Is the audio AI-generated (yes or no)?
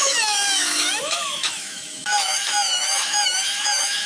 yes